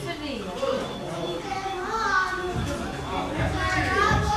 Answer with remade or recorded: recorded